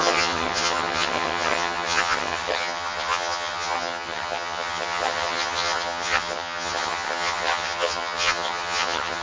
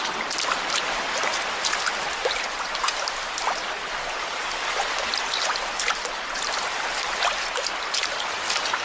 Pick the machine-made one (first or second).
first